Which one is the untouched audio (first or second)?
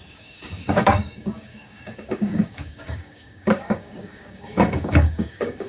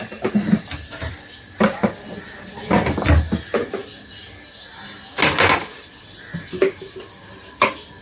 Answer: second